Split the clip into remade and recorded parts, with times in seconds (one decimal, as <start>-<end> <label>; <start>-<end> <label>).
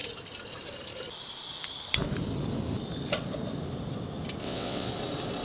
0.0-4.4 recorded; 4.4-4.9 remade; 4.9-5.4 recorded